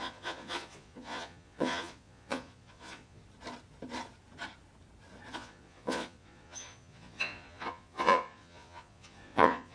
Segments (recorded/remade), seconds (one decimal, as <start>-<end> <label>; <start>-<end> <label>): 0.0-3.2 remade; 3.2-5.3 recorded; 5.3-9.7 remade